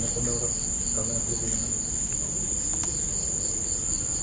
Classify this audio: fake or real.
real